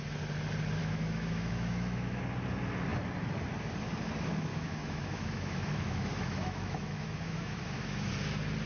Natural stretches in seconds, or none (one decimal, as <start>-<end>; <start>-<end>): 0.0-0.8; 2.2-4.5; 8.1-8.7